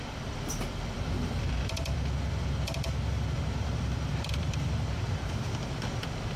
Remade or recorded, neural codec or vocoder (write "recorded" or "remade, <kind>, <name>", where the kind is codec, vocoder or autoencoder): remade, vocoder, BigVGAN v2